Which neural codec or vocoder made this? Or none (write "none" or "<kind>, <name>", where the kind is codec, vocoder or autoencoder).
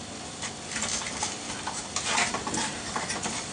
none